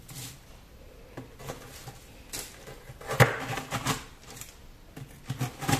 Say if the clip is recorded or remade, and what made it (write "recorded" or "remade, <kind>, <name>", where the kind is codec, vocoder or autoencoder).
recorded